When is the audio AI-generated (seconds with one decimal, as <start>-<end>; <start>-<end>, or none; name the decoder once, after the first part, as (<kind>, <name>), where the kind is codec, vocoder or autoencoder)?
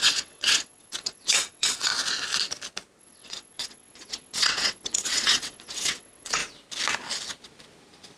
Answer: 0.0-1.9 (vocoder, WaveNeXt); 3.0-6.4